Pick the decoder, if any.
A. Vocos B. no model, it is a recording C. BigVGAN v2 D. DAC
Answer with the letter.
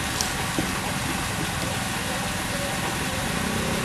B